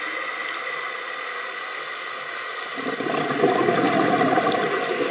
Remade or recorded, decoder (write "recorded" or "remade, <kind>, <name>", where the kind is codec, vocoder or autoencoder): recorded